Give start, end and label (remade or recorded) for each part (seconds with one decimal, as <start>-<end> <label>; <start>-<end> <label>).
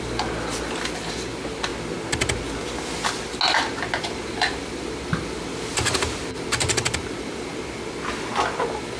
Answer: 0.0-1.7 remade; 1.7-4.0 recorded; 4.0-7.5 remade; 7.5-8.6 recorded; 8.6-9.0 remade